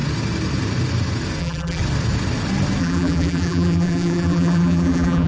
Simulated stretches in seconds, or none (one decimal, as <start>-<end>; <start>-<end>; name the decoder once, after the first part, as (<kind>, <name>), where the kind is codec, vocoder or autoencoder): 1.4-1.8 (vocoder, BigVGAN v2); 2.8-5.3